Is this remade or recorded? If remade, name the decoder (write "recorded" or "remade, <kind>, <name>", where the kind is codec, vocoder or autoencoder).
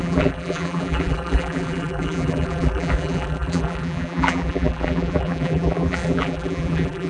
remade, vocoder, BigVGAN v2